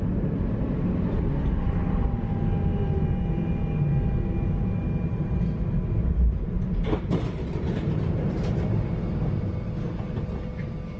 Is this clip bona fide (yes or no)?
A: yes